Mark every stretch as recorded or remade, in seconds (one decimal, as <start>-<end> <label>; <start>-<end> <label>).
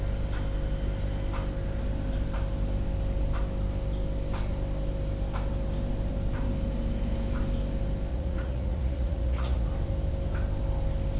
0.0-8.1 recorded; 8.1-9.7 remade; 9.7-11.2 recorded